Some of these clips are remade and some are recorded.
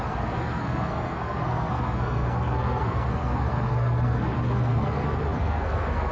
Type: remade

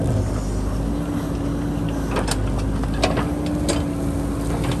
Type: recorded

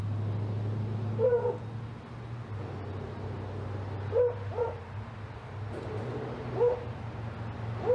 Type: recorded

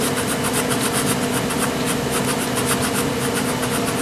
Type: recorded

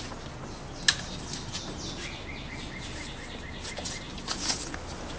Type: recorded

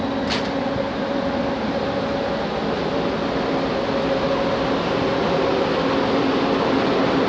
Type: recorded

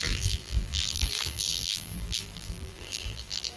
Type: remade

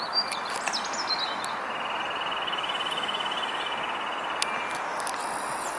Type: recorded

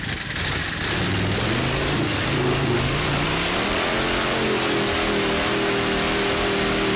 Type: recorded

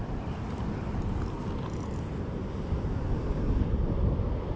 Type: recorded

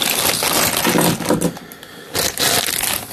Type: recorded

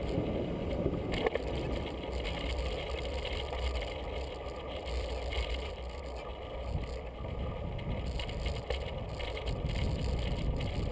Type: recorded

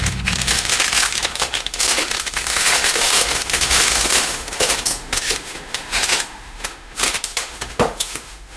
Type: remade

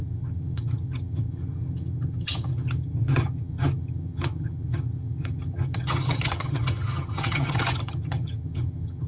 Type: remade